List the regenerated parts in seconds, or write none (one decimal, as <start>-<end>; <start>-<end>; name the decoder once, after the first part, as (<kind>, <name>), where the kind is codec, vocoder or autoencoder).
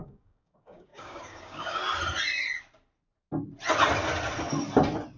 0.0-1.8 (codec, DAC)